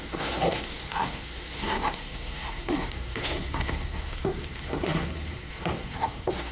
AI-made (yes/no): yes